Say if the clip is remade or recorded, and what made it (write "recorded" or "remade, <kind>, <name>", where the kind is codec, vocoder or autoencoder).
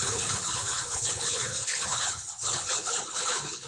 remade, codec, HILCodec